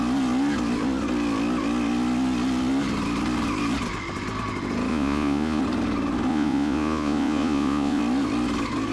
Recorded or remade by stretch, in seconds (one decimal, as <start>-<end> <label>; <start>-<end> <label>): 0.0-4.9 recorded; 4.9-5.6 remade; 5.6-6.3 recorded; 6.3-8.0 remade; 8.0-8.9 recorded